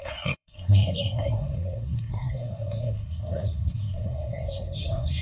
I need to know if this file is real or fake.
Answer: fake